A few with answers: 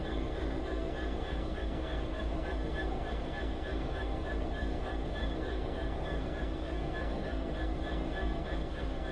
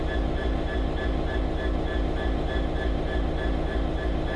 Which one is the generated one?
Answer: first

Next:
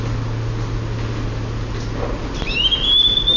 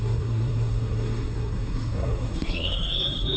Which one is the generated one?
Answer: second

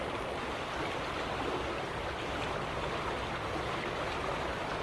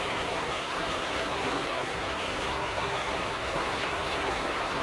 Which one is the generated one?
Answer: second